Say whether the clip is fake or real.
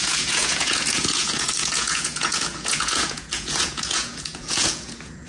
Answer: fake